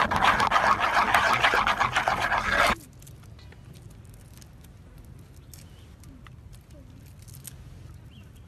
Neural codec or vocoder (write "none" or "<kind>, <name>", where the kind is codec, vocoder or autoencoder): none